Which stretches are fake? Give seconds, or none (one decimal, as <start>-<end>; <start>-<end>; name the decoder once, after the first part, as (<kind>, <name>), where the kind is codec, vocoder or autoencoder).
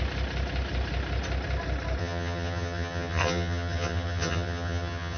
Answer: 2.0-5.2 (vocoder, HiFi-GAN)